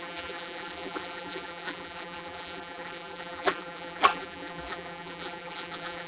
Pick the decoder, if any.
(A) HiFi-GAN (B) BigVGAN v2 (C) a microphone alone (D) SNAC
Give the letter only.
B